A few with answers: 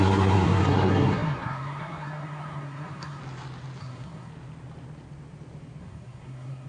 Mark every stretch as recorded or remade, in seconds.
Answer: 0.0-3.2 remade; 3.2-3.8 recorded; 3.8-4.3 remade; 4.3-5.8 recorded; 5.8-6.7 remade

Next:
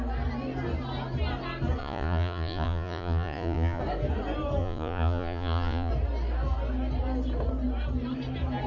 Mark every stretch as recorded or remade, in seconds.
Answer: 0.0-1.8 recorded; 1.8-3.8 remade; 3.8-4.6 recorded; 4.6-5.9 remade; 5.9-8.7 recorded